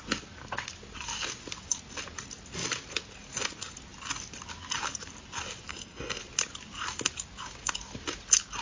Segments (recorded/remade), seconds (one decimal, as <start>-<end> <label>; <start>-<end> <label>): 0.0-5.7 recorded; 5.7-6.2 remade; 6.2-8.6 recorded